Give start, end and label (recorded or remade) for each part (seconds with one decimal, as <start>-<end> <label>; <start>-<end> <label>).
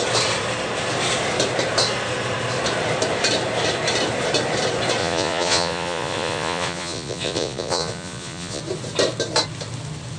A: 0.0-5.0 recorded; 5.0-8.6 remade; 8.6-10.2 recorded